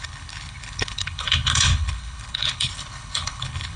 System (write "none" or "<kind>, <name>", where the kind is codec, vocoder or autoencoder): codec, HILCodec